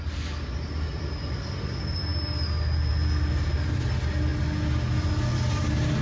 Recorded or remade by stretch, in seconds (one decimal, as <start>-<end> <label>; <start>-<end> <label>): 0.0-6.0 recorded